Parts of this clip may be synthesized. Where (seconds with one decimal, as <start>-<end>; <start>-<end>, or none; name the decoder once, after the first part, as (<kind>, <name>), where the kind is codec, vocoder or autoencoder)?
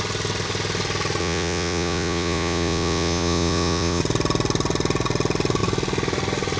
1.2-4.0 (vocoder, Vocos)